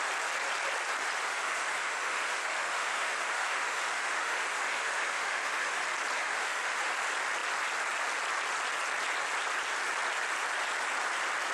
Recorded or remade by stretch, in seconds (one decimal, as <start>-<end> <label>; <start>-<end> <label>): 0.0-1.3 recorded; 1.3-5.8 remade; 5.8-6.2 recorded; 6.2-6.9 remade; 6.9-11.5 recorded